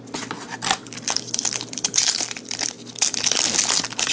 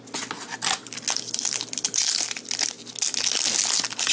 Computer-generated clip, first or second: first